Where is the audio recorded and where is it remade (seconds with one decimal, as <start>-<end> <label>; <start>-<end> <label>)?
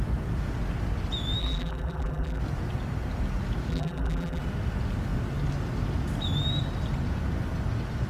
0.0-1.4 recorded; 1.4-2.4 remade; 2.4-3.7 recorded; 3.7-4.4 remade; 4.4-8.1 recorded